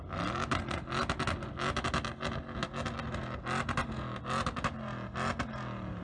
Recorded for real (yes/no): yes